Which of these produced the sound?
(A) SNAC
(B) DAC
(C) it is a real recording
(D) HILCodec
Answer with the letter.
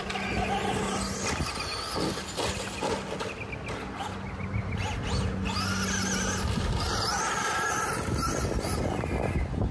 C